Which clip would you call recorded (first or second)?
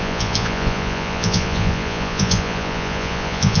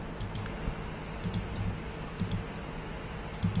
second